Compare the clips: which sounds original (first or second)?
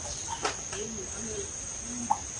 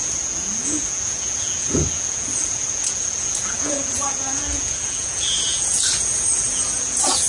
first